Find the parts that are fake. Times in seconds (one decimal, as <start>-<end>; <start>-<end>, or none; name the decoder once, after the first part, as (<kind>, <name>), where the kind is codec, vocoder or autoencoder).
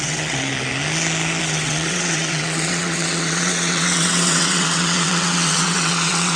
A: 0.0-0.5 (vocoder, WaveNeXt); 1.4-6.4